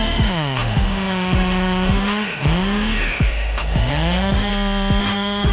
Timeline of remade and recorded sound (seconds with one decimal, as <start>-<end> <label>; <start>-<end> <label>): 0.0-4.5 remade; 4.5-5.0 recorded; 5.0-5.5 remade